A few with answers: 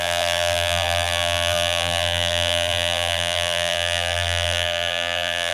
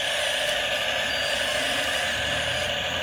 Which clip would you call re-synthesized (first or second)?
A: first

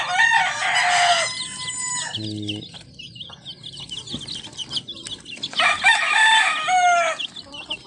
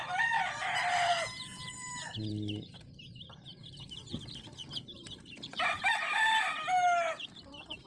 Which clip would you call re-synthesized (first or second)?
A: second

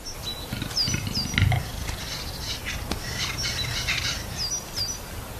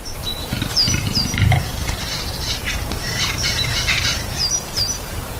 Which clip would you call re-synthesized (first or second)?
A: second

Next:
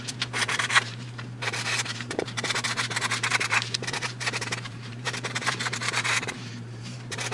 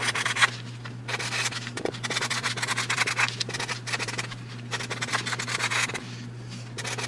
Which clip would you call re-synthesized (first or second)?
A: first